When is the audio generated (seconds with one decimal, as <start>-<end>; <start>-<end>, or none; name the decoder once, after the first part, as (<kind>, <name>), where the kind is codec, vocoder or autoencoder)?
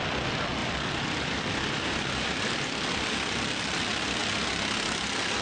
0.6-3.8 (vocoder, BigVGAN v2)